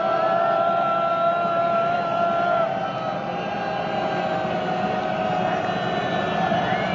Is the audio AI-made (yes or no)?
no